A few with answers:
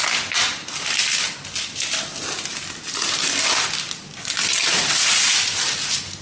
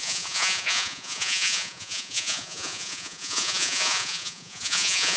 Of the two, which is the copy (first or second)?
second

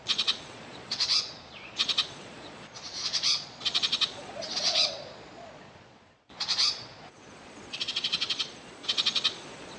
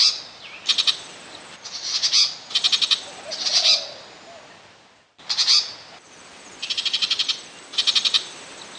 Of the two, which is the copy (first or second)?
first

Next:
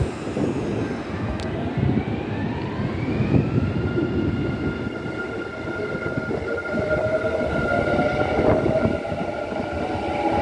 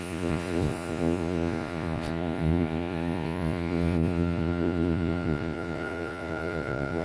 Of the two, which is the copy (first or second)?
second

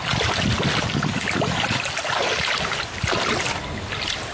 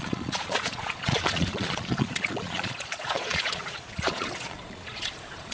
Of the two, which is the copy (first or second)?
second